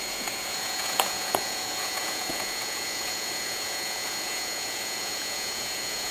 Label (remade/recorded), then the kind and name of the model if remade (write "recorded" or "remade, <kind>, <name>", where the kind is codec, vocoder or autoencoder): remade, vocoder, Vocos